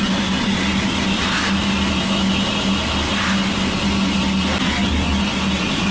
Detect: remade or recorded recorded